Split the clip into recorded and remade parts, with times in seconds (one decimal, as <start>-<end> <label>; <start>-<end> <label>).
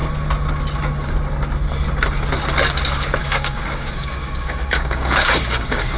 0.0-3.2 recorded; 3.2-6.0 remade